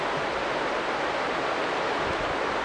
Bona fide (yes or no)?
yes